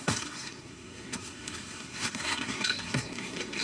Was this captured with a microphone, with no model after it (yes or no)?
no